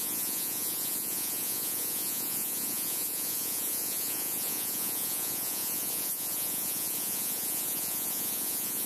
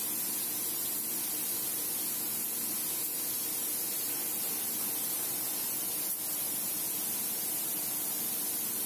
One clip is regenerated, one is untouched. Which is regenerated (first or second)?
first